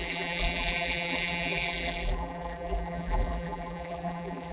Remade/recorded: remade